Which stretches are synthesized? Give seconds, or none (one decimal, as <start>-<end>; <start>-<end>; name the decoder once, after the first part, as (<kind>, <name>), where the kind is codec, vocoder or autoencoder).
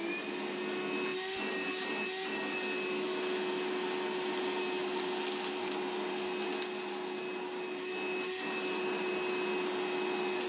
none